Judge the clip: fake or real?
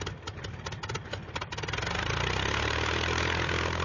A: real